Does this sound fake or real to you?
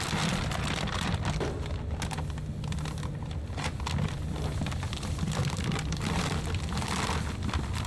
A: real